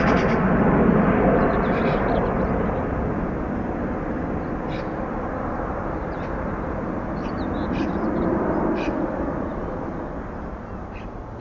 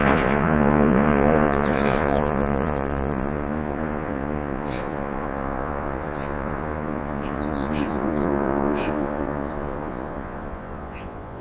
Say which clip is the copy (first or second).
second